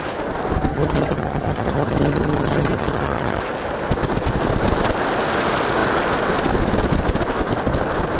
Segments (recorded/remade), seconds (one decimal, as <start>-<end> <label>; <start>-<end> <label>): 0.0-0.7 recorded; 0.7-3.4 remade; 3.4-8.2 recorded